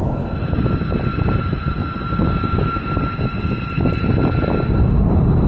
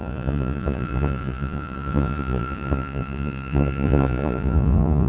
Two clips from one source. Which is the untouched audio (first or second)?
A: first